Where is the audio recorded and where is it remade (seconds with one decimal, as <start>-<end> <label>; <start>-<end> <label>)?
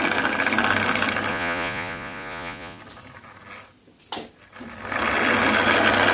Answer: 0.0-1.3 recorded; 1.3-2.8 remade; 2.8-6.1 recorded